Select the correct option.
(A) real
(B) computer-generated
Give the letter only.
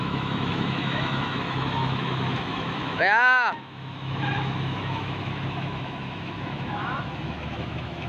B